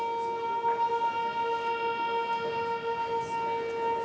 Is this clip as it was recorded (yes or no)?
yes